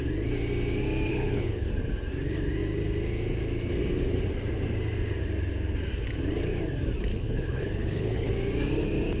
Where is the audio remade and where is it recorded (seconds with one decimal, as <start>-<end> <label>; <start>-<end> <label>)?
0.0-1.1 recorded; 1.1-1.7 remade; 1.7-7.1 recorded; 7.1-8.3 remade; 8.3-9.2 recorded